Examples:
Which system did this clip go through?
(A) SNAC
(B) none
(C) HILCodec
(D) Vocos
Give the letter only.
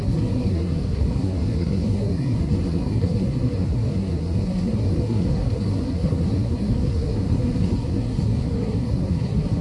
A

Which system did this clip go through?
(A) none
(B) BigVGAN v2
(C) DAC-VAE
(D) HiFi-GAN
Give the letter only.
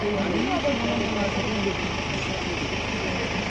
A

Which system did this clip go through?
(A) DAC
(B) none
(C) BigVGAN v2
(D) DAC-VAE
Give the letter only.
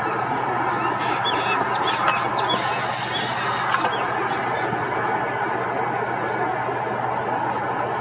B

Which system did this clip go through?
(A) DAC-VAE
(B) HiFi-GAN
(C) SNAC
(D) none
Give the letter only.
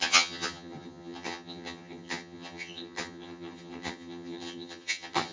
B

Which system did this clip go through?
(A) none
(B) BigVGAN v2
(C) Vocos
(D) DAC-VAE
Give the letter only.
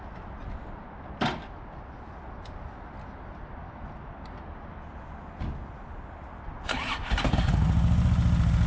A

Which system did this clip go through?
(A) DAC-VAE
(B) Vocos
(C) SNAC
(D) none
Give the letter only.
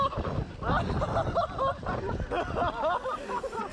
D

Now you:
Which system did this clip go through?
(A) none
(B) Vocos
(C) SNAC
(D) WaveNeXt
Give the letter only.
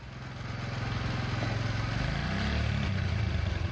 A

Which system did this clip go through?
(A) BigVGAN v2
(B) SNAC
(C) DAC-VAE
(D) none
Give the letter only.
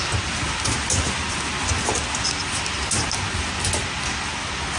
D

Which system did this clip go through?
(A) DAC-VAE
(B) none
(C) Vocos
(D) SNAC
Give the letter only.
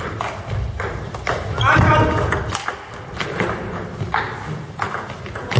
B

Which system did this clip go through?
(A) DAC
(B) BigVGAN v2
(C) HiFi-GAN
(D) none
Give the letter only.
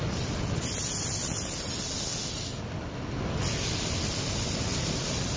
D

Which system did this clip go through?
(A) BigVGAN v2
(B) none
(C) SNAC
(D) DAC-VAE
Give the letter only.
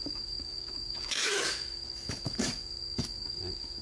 D